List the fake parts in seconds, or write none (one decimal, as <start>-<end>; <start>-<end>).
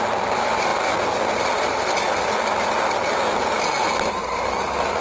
none